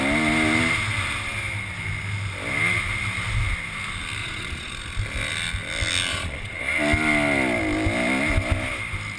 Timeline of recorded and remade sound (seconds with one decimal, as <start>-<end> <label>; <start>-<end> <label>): 0.0-4.2 recorded; 4.2-4.7 remade; 4.7-6.1 recorded; 6.1-6.6 remade; 6.6-9.2 recorded